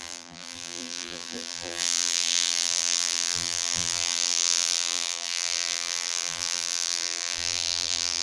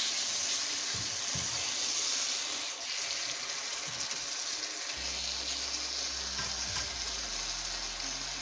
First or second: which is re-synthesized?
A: first